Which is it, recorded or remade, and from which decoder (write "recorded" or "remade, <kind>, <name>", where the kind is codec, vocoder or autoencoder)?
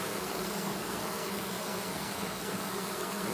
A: remade, codec, SNAC